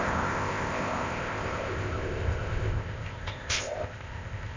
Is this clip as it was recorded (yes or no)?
no